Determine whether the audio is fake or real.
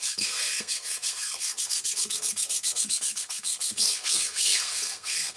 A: fake